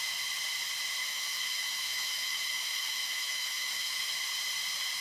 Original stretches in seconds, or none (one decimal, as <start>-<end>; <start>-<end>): 0.0-1.0; 4.0-5.0